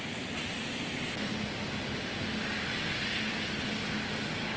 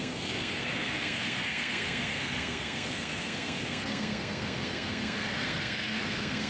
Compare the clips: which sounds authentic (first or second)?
first